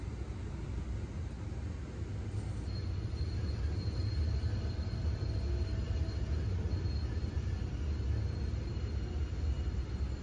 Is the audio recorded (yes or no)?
yes